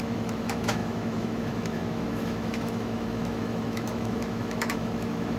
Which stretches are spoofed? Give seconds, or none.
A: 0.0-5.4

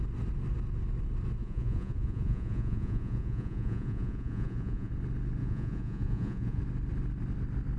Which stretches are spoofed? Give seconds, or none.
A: 1.4-4.9; 5.4-6.6

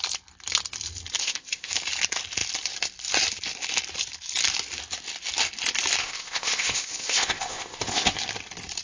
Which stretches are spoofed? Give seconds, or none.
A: 1.2-1.7; 6.0-8.1

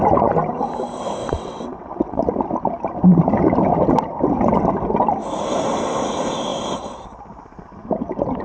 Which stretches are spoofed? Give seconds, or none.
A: 1.2-2.2

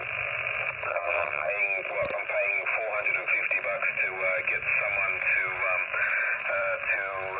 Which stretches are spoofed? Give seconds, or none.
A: 0.9-1.5